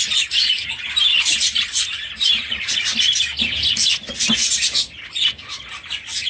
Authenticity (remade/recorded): recorded